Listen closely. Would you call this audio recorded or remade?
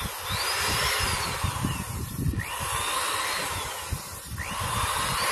recorded